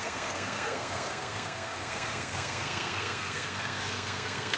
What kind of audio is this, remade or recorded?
remade